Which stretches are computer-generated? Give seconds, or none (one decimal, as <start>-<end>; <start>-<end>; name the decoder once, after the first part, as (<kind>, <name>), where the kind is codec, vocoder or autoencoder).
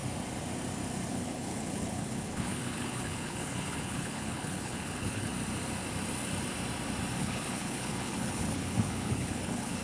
1.1-5.3 (codec, HILCodec); 7.2-9.8